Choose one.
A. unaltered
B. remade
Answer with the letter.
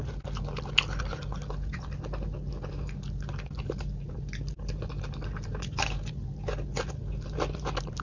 A